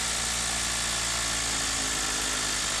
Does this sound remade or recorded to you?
recorded